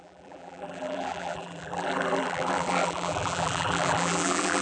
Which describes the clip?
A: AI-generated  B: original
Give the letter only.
A